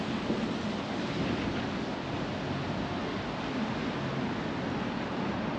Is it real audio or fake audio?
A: real